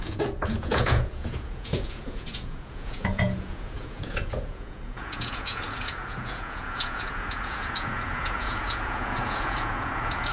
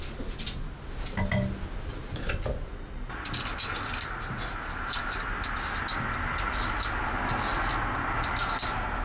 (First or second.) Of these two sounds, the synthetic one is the first